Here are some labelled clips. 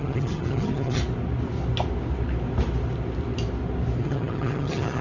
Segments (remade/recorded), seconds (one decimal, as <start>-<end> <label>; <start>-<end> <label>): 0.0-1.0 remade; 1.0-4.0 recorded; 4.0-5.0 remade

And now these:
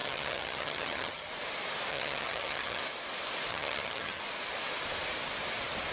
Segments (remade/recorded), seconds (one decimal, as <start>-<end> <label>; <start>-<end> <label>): 0.0-1.3 remade; 1.3-1.9 recorded; 1.9-2.8 remade; 2.8-3.5 recorded; 3.5-4.2 remade; 4.2-5.9 recorded

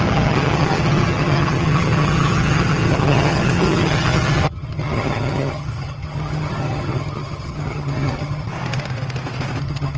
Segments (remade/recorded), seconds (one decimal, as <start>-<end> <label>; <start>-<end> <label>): 0.0-8.5 remade; 8.5-9.6 recorded; 9.6-10.0 remade

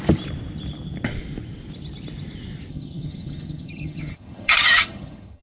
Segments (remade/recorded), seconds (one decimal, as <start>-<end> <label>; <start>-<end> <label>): 0.0-2.7 recorded; 2.7-5.4 remade

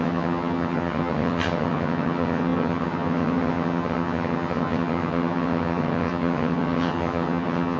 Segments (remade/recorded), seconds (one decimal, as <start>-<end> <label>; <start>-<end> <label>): 0.0-7.8 remade

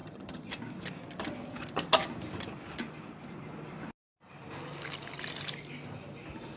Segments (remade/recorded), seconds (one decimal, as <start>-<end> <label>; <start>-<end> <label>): 0.0-0.5 remade; 0.5-6.6 recorded

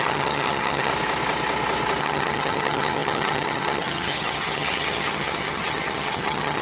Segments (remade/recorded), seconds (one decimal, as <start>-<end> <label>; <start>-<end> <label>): 0.0-0.9 remade; 0.9-2.0 recorded; 2.0-6.6 remade